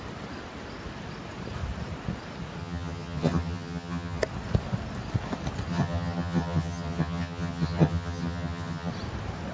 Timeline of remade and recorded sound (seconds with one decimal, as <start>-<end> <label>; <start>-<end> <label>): 0.0-2.6 recorded; 2.6-4.2 remade; 4.2-5.7 recorded; 5.7-8.9 remade; 8.9-9.5 recorded